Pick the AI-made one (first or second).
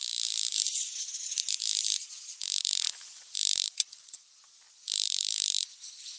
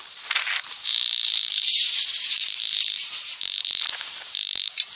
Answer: second